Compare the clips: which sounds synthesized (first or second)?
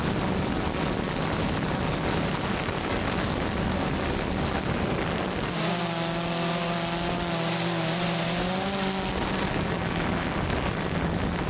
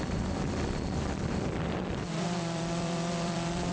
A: second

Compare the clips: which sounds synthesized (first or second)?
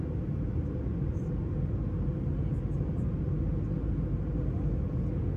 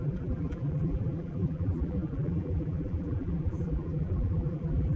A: second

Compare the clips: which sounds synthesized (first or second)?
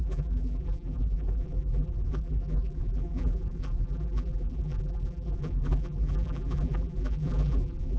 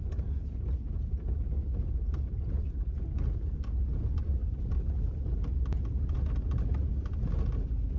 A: first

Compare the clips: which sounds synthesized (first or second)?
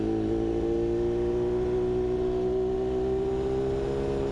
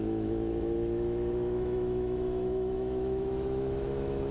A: second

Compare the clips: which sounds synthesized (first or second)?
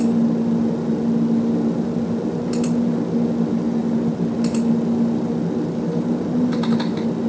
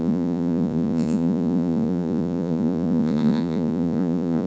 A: second